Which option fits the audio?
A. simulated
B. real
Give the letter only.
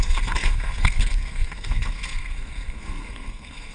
A